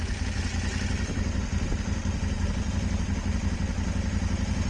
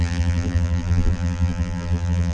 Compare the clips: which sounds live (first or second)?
first